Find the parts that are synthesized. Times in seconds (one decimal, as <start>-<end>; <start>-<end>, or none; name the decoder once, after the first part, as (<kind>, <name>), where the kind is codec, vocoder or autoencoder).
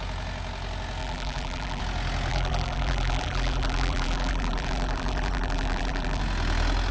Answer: 1.0-1.8 (vocoder, BigVGAN v2); 2.3-6.2